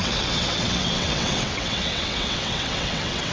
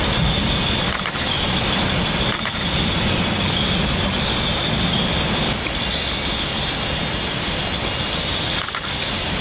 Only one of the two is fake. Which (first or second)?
first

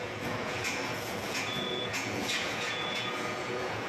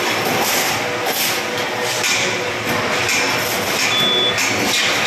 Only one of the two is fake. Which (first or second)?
first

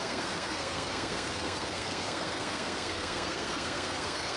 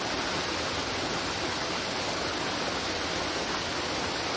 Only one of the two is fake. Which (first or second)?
first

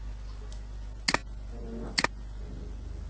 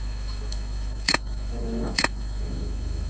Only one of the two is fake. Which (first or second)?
second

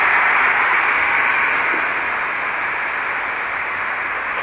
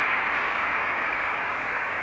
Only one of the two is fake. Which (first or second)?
second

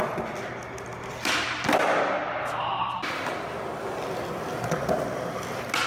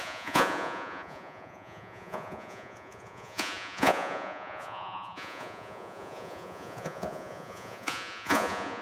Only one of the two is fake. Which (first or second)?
second